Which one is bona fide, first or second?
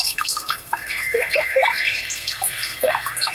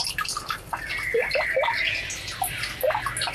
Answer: second